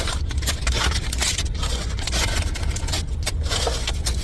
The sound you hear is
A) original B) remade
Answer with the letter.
B